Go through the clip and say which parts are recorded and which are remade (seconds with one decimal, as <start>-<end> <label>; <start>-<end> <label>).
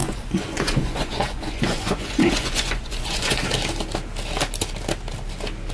0.0-3.4 remade; 3.4-5.7 recorded